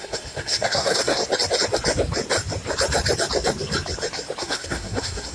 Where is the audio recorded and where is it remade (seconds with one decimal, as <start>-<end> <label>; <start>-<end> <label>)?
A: 0.0-1.2 remade; 1.2-4.4 recorded; 4.4-5.3 remade